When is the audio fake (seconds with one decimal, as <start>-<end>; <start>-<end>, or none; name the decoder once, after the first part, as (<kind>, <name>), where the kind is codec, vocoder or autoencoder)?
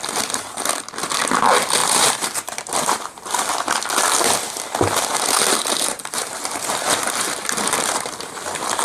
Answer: 1.8-3.4 (vocoder, BigVGAN v2); 5.6-8.8